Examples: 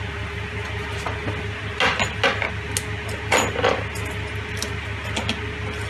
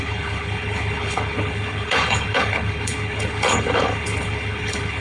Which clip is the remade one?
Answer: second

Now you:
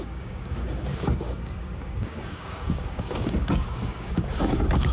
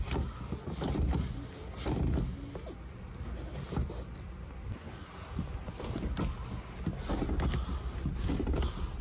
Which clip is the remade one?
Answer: first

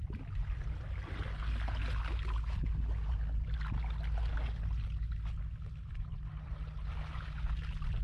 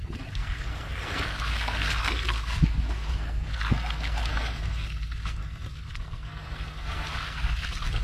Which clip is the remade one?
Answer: second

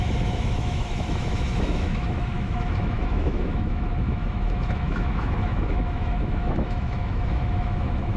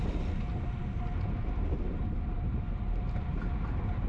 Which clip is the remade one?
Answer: first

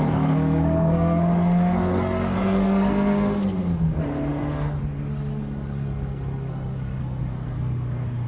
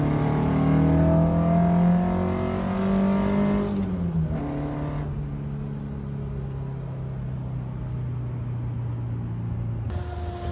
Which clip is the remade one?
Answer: first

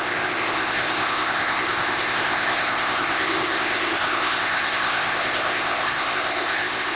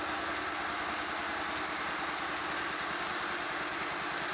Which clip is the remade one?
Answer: first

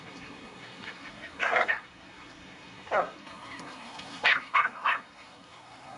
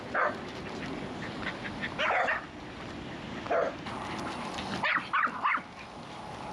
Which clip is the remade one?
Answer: first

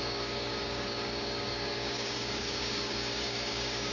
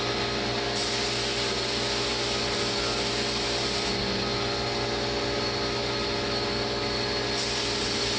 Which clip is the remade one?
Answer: first